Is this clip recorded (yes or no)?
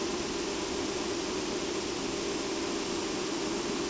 yes